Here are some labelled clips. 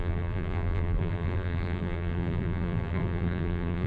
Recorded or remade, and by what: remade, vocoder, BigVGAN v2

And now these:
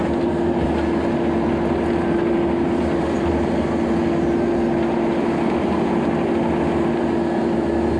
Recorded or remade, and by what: recorded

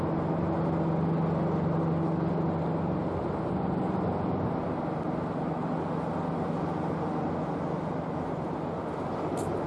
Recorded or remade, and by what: recorded